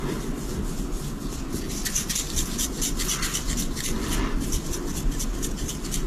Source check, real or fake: real